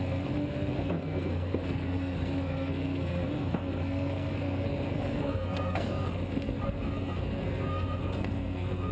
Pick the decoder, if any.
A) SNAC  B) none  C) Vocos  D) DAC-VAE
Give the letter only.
A